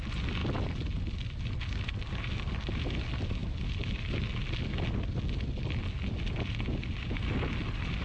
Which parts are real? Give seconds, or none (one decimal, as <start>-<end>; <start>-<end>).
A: 0.0-8.0